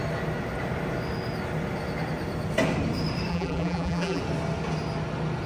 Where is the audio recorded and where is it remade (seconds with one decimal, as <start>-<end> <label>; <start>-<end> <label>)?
0.0-3.3 recorded; 3.3-4.2 remade; 4.2-5.5 recorded